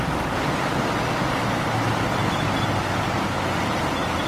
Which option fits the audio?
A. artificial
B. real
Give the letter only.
B